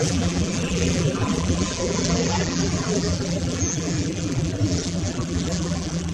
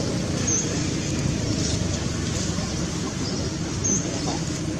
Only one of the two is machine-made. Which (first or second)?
first